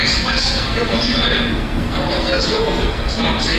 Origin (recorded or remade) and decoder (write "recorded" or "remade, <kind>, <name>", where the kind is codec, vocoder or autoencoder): remade, codec, SNAC